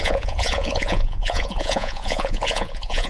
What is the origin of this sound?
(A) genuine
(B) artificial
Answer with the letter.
B